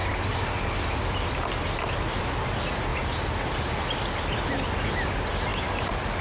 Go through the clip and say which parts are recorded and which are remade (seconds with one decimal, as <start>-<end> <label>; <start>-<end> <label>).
0.0-6.2 recorded